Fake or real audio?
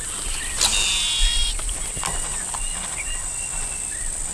real